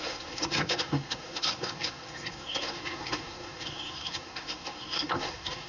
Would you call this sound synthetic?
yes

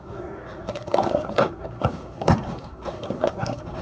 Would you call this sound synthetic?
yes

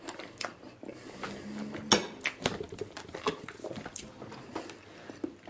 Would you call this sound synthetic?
no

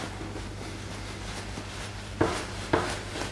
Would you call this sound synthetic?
no